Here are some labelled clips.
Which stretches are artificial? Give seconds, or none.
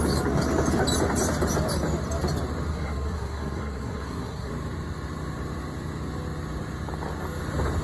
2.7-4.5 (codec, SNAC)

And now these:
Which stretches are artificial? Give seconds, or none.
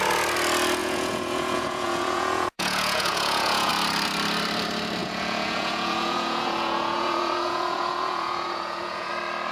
0.8-3.7 (vocoder, Vocos); 5.0-9.1